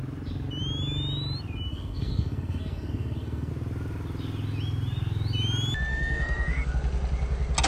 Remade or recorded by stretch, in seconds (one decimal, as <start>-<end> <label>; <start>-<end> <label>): 0.0-1.7 recorded; 1.7-3.5 remade; 3.5-5.9 recorded; 5.9-6.7 remade; 6.7-7.7 recorded